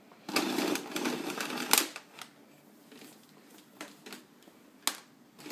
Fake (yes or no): no